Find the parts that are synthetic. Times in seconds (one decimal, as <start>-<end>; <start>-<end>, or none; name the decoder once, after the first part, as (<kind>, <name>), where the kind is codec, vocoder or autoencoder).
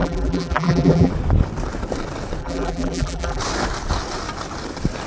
0.0-1.1 (vocoder, BigVGAN v2); 2.4-3.4